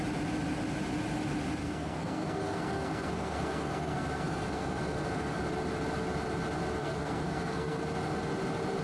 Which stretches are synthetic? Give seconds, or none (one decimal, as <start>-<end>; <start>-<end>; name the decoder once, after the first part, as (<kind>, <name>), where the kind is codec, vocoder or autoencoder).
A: 1.6-5.4 (codec, SNAC); 6.8-7.8

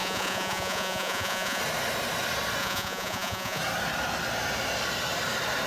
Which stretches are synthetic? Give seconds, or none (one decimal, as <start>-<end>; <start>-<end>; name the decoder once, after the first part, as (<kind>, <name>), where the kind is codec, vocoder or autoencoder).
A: 0.0-1.6 (vocoder, Vocos); 2.6-3.6

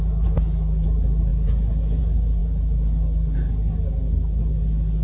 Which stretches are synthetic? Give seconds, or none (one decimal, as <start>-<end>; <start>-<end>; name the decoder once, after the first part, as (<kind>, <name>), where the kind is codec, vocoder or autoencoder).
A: none

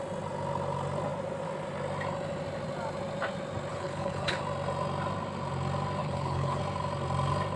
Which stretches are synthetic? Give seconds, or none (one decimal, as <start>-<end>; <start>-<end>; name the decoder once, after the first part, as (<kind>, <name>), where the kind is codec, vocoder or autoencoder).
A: 3.7-4.4 (codec, HILCodec); 6.0-6.6

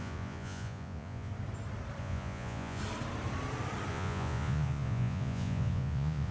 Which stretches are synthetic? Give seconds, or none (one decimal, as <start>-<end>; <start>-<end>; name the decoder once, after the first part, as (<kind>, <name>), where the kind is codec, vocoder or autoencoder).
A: 0.0-1.3 (vocoder, Vocos); 2.0-2.8; 3.9-6.3